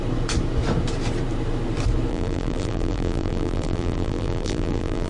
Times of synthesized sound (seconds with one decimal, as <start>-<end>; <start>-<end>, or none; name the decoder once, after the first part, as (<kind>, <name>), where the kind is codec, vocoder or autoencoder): 2.1-5.1 (vocoder, BigVGAN v2)